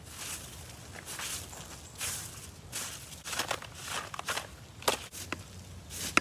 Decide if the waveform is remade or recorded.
recorded